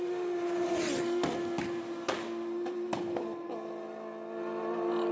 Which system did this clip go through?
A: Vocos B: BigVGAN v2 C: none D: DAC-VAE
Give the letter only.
C